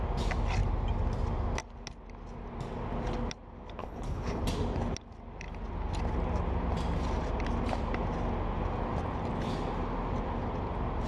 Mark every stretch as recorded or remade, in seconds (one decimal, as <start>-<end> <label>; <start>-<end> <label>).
0.0-3.8 recorded; 3.8-4.4 remade; 4.4-11.1 recorded